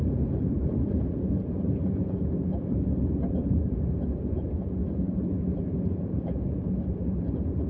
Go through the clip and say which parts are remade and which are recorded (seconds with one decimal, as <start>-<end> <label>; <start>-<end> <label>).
0.0-7.7 remade